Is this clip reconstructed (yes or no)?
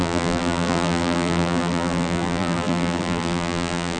yes